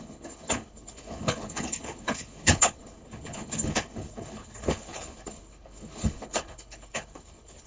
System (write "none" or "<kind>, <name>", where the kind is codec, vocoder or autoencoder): codec, HILCodec